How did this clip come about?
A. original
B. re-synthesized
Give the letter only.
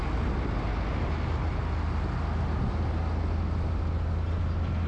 A